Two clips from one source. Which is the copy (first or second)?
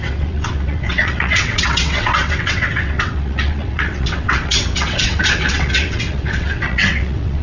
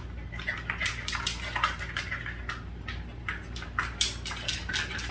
first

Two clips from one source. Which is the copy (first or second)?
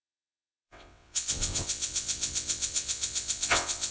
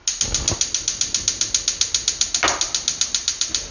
first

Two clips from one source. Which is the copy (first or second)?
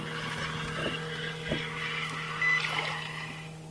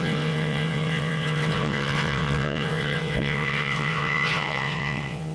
second